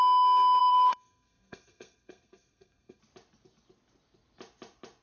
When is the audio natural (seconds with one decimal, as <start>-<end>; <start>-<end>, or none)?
0.0-0.6; 3.0-5.0

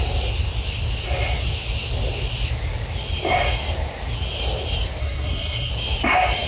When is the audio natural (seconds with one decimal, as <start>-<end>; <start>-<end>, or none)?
0.0-5.0; 5.7-6.5

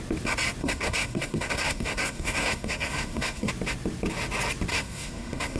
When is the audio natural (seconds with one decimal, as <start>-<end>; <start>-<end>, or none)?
0.0-0.6; 3.5-4.7

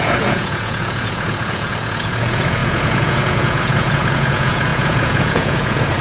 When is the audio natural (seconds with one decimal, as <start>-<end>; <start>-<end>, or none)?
none

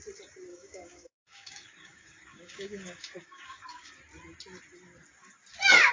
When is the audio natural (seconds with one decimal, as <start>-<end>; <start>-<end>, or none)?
0.0-0.5; 4.0-5.9

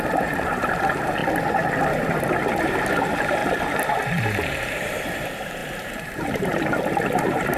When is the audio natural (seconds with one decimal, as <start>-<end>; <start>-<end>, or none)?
1.2-1.7; 3.4-4.2

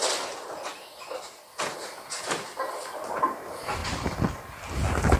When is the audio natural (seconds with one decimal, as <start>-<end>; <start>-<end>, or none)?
0.0-3.8; 4.7-5.2